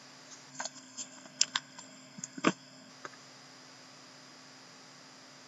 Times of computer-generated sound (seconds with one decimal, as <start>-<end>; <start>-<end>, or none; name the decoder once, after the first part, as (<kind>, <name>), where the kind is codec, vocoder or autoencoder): 0.5-2.9 (codec, SNAC)